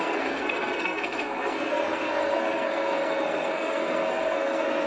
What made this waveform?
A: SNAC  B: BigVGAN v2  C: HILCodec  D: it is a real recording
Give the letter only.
A